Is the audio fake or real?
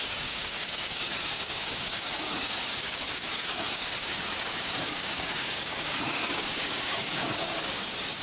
fake